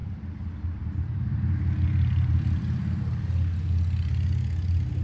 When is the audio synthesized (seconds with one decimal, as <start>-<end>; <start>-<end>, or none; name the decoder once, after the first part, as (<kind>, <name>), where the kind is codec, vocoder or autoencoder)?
0.0-3.0 (vocoder, BigVGAN v2)